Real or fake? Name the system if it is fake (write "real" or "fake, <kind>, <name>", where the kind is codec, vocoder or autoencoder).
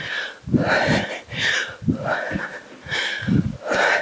real